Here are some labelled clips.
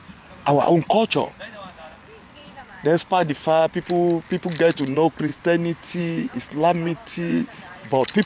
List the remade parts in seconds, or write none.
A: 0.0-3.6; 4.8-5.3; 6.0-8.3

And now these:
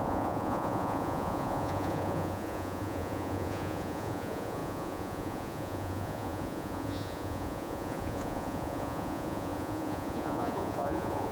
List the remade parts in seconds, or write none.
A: 0.0-11.3

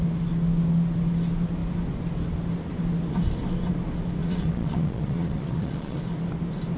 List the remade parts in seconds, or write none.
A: 4.2-6.0